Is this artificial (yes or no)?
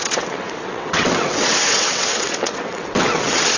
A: yes